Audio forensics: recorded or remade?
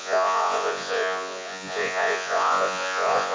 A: remade